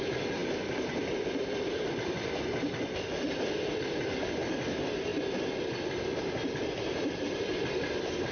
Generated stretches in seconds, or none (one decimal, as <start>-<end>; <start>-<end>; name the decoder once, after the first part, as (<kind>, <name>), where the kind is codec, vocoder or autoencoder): none